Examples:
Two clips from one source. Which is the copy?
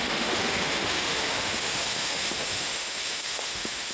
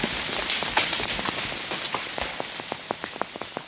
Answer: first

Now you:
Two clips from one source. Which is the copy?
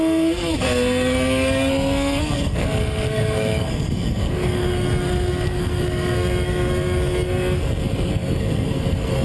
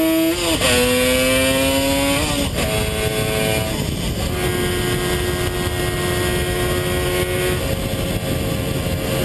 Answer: first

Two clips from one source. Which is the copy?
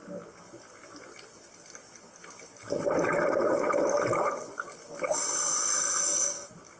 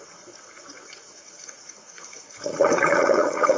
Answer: second